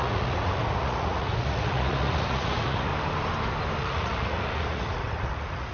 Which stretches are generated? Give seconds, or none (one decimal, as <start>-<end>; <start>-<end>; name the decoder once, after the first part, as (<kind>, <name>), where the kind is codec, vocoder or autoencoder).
0.0-2.9 (vocoder, Vocos); 3.8-5.7